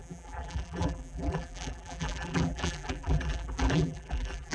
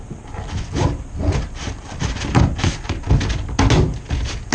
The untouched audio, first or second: second